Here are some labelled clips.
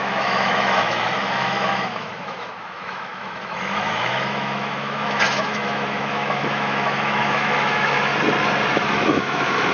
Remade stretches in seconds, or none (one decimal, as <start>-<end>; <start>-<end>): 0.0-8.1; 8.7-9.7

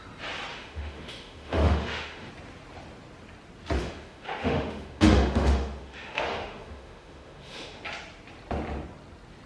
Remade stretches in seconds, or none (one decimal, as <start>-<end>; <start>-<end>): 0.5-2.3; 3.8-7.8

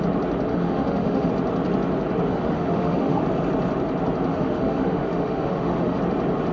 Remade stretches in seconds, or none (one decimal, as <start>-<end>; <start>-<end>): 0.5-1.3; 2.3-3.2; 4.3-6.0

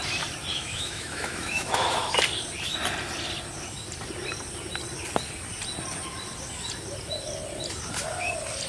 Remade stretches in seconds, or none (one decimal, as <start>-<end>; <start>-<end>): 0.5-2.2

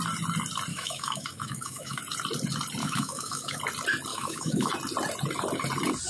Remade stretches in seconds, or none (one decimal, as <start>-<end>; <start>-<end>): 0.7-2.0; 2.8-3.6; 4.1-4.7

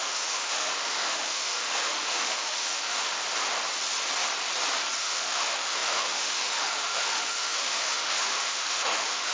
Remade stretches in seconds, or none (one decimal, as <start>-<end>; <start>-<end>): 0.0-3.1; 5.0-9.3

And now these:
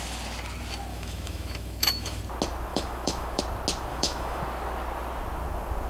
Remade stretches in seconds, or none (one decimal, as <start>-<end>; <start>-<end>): 0.9-2.2; 2.7-3.4; 3.9-4.4